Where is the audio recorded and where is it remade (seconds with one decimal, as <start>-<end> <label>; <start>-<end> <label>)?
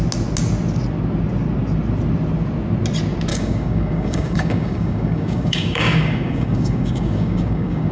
0.0-3.3 recorded; 3.3-7.9 remade